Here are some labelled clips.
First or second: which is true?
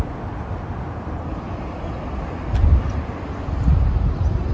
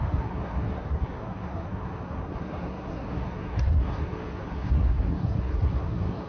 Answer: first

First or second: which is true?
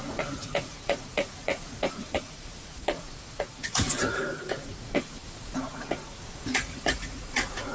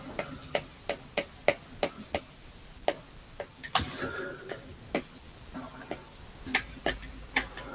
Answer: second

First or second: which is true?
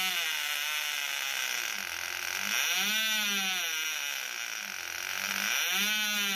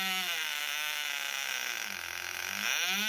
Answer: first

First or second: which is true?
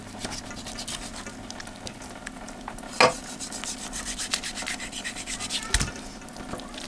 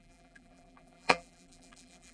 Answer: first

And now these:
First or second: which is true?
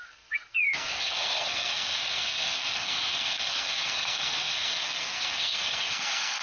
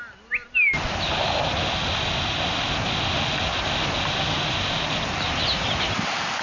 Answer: second